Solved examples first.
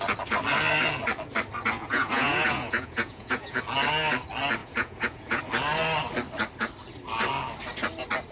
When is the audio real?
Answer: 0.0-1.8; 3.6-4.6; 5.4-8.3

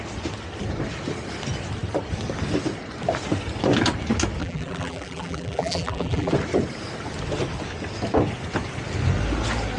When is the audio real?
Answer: 0.0-4.4; 6.3-9.8

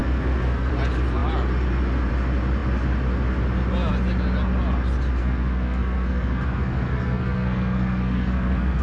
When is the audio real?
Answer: 0.7-5.2

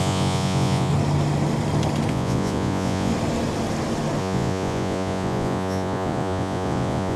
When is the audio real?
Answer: 0.9-2.1; 3.1-4.2

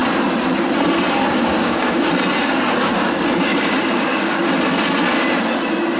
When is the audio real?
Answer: 0.0-1.6; 2.1-3.5; 4.5-6.0

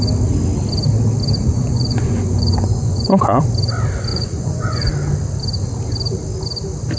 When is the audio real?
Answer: 0.0-1.4; 3.4-4.1; 4.9-7.0